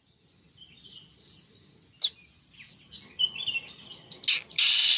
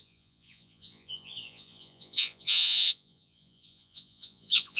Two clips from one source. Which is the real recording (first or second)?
first